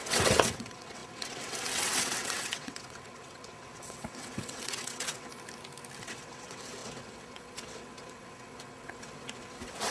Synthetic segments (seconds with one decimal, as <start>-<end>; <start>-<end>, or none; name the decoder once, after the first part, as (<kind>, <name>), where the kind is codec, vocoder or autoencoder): 0.0-5.3 (vocoder, WaveNeXt); 6.0-9.9